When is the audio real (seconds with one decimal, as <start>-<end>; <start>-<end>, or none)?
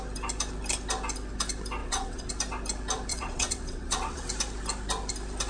0.0-1.8; 2.3-3.1; 4.3-5.5